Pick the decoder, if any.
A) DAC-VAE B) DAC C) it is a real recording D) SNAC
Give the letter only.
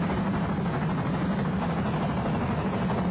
C